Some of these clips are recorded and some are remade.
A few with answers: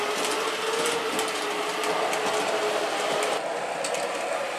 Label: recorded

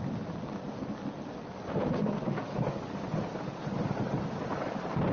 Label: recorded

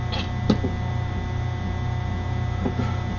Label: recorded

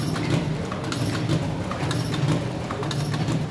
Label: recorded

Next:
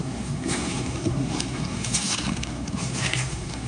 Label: remade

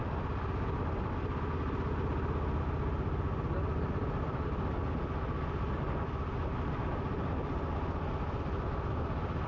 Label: recorded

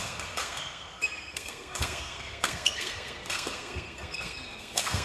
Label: remade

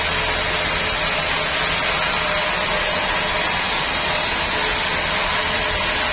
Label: recorded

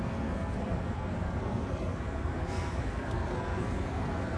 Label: remade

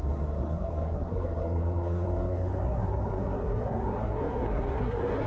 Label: remade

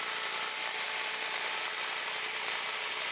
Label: recorded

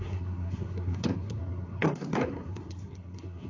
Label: remade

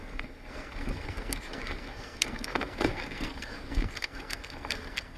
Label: remade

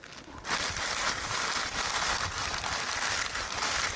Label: recorded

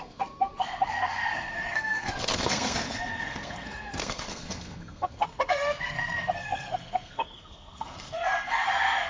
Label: remade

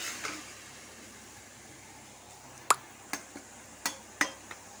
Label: recorded